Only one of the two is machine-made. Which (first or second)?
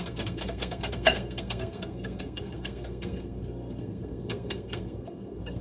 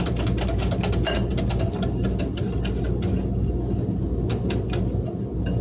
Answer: first